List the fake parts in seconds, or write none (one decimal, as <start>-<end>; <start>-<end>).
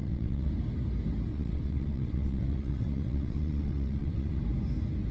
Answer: 0.0-0.5; 1.3-4.4